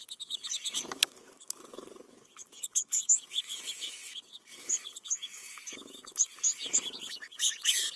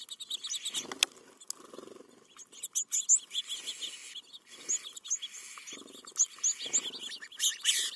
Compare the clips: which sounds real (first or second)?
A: second